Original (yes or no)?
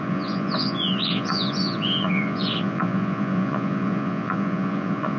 no